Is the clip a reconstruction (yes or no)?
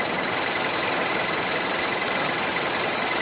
yes